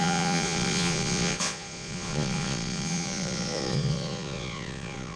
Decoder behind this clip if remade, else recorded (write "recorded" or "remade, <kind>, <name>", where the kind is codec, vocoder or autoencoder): remade, vocoder, Vocos